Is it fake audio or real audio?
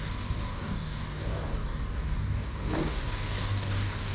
fake